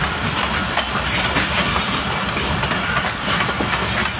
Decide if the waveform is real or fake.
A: real